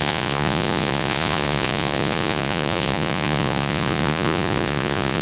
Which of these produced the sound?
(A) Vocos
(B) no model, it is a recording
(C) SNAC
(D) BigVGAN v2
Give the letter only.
A